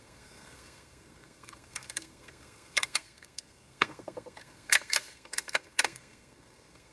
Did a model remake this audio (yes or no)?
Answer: yes